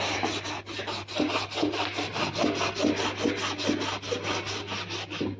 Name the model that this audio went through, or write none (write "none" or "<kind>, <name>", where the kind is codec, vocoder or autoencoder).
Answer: none